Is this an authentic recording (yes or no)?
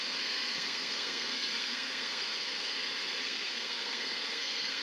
no